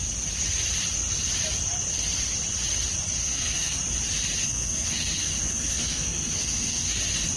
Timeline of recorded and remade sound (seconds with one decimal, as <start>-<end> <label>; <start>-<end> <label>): 0.0-3.2 recorded; 3.2-3.8 remade; 3.8-4.4 recorded; 4.4-7.0 remade; 7.0-7.4 recorded